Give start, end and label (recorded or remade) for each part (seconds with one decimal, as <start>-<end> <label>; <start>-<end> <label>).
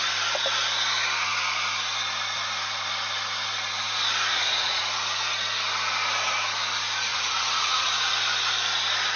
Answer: 0.0-4.3 recorded; 4.3-4.8 remade; 4.8-7.1 recorded; 7.1-8.1 remade; 8.1-9.2 recorded